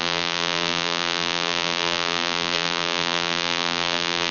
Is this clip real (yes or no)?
no